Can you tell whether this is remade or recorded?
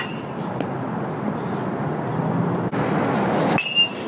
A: recorded